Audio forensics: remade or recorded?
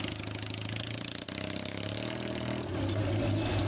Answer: recorded